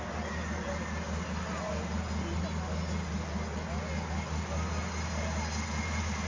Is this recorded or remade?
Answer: recorded